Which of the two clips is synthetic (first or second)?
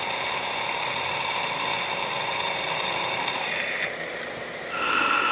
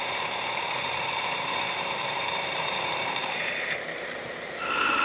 second